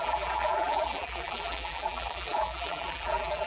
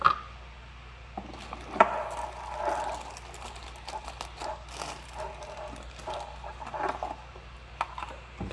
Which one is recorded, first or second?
second